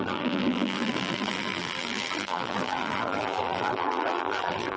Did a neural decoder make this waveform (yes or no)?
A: yes